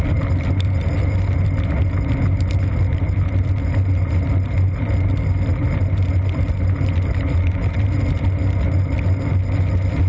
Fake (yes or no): no